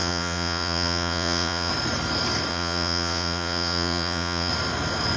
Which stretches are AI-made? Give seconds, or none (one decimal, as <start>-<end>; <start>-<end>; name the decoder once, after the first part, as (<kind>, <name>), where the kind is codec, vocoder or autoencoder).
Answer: 0.0-1.7 (vocoder, Vocos); 2.5-4.5